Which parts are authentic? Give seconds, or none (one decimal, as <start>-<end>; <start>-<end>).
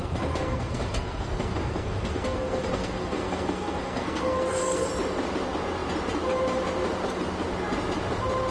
4.9-8.5